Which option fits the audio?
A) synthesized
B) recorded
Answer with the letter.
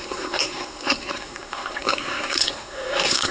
A